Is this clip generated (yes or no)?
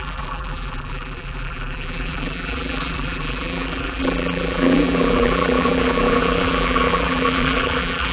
yes